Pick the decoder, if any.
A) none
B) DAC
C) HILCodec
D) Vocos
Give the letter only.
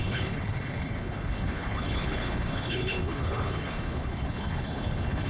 C